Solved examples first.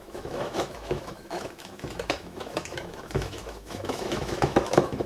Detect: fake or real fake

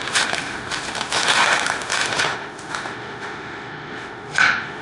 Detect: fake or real fake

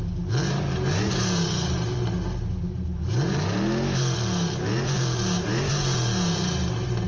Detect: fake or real real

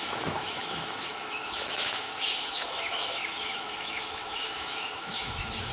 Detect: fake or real fake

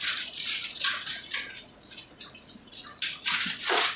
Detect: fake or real fake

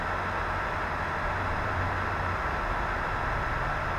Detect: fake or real real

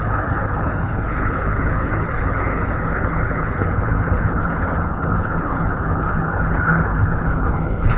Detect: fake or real fake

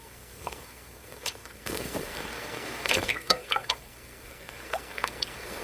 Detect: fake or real fake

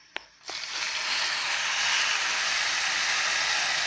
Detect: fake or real real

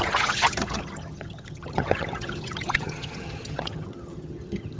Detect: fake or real fake